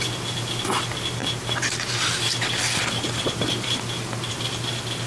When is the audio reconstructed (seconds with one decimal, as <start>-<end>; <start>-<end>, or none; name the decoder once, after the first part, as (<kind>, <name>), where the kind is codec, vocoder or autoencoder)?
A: none